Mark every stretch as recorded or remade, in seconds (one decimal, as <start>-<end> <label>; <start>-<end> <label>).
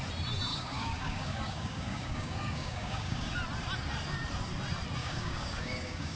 0.0-0.5 recorded; 0.5-3.3 remade; 3.3-5.0 recorded; 5.0-6.2 remade